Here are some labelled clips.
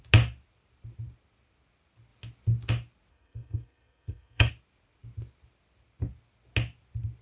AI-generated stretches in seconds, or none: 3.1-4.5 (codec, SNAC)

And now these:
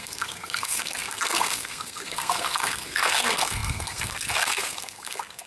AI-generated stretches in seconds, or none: 0.0-5.5 (codec, SNAC)

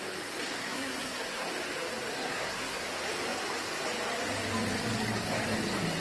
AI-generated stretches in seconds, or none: 0.4-1.5 (codec, SNAC); 2.1-2.8

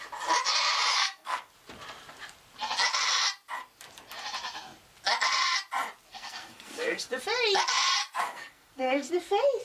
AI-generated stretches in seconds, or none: 0.9-1.5 (codec, SNAC); 6.1-7.2; 8.0-9.1

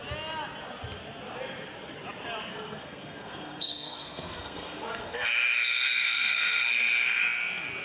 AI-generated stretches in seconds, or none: 2.5-7.2 (codec, SNAC)

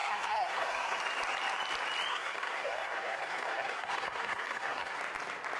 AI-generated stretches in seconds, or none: 0.0-1.0 (codec, SNAC); 2.1-5.0

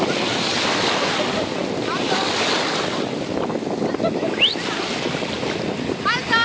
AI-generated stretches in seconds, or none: none